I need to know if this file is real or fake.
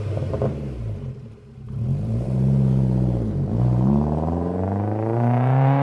fake